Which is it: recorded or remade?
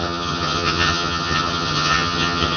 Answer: remade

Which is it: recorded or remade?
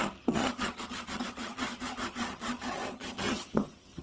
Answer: remade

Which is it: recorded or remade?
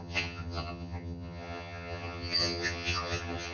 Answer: remade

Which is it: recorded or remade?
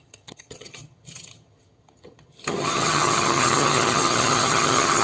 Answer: remade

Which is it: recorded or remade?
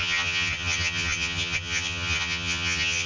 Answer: remade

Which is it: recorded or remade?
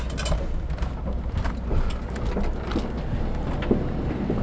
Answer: recorded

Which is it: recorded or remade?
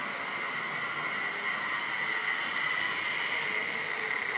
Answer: recorded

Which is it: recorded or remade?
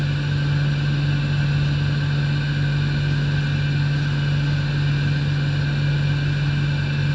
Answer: recorded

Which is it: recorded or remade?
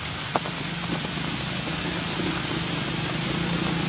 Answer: recorded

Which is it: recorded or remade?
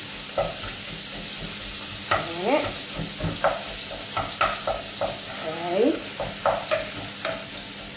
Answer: recorded